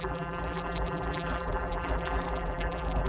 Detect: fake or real fake